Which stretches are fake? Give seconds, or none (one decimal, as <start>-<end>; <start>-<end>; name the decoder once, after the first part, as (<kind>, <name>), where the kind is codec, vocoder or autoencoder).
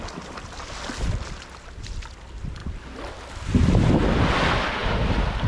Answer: 4.8-5.5 (vocoder, BigVGAN v2)